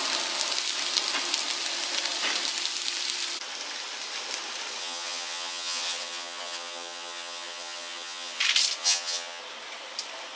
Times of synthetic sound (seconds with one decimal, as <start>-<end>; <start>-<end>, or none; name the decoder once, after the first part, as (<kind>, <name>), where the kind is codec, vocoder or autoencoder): 4.8-8.4 (vocoder, HiFi-GAN); 8.8-9.4